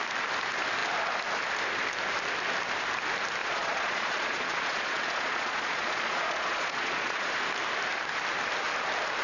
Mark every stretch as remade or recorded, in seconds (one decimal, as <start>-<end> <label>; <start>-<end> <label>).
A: 0.0-3.4 recorded; 3.4-7.3 remade; 7.3-9.2 recorded